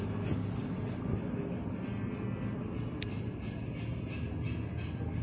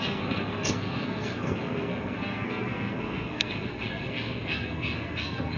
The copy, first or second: second